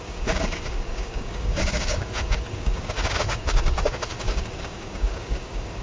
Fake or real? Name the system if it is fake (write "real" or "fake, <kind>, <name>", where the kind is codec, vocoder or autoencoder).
fake, codec, DAC